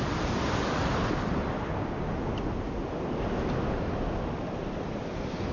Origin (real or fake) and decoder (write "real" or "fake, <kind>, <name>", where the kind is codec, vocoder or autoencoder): real